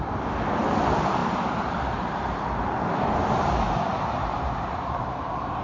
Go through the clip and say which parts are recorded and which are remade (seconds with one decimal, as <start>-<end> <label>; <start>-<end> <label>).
0.0-1.2 recorded; 1.2-4.6 remade; 4.6-5.6 recorded